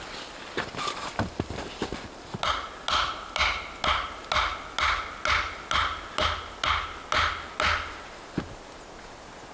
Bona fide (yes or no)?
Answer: yes